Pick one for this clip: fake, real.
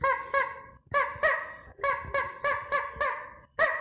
real